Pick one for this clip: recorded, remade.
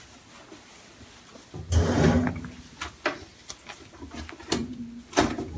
recorded